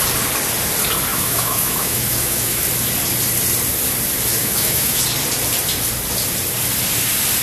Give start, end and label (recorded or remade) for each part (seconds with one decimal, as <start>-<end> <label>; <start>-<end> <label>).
0.0-1.1 recorded; 1.1-2.6 remade; 2.6-4.4 recorded; 4.4-5.0 remade; 5.0-7.4 recorded